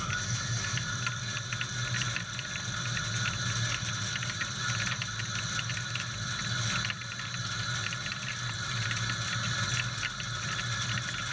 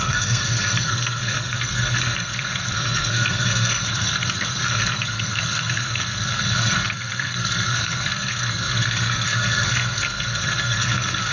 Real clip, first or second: first